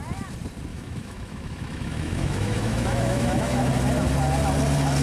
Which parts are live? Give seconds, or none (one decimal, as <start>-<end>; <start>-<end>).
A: 0.0-0.7; 3.7-5.0

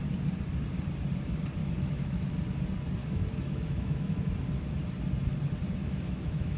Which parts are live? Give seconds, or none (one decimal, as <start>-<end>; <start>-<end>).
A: 0.0-1.6; 2.3-3.0; 4.3-5.8

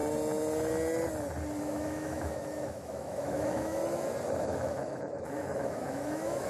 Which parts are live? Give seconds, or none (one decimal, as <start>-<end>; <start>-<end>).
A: 0.0-1.6; 3.8-4.4